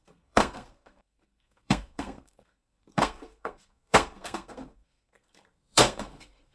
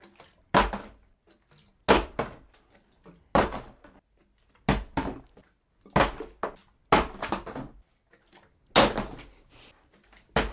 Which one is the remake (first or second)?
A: first